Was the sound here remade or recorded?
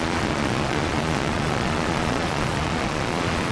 remade